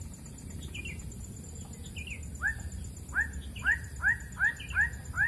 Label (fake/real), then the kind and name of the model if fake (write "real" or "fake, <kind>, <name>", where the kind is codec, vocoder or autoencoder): real